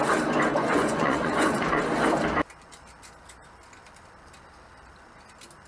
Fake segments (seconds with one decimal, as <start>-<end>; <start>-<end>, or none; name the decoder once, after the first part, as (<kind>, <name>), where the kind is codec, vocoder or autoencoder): 0.5-1.8 (vocoder, Vocos)